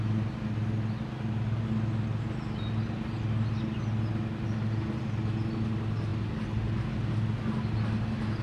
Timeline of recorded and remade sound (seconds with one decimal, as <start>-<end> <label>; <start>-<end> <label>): 0.0-8.4 recorded